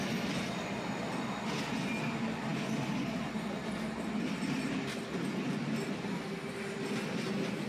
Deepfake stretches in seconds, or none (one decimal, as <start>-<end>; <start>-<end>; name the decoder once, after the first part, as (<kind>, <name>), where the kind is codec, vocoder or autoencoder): none